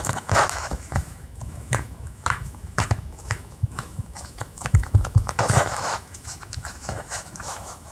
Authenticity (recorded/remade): remade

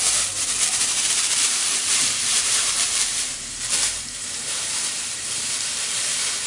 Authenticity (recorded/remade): remade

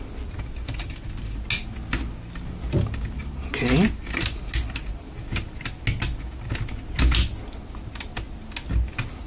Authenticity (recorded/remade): recorded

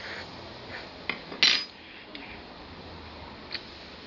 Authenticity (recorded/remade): recorded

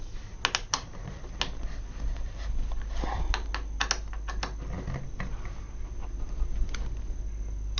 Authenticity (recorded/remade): recorded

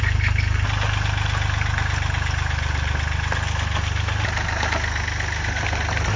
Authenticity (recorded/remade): recorded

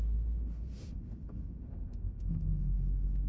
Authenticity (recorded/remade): remade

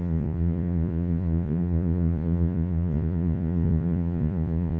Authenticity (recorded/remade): remade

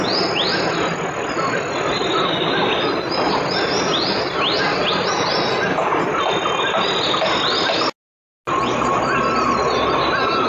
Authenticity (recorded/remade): recorded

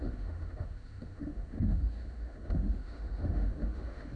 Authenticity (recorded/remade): remade